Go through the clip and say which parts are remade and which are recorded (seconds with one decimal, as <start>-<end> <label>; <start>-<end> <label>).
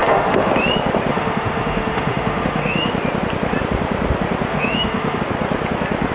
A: 0.0-0.5 remade; 0.5-1.1 recorded; 1.1-2.9 remade; 2.9-4.5 recorded; 4.5-5.2 remade; 5.2-6.1 recorded